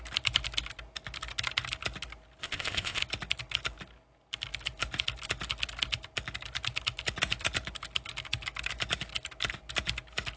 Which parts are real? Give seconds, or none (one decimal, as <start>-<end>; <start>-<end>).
0.0-2.4; 3.0-10.4